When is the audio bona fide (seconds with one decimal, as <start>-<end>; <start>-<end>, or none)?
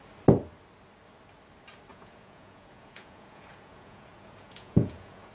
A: 0.0-1.9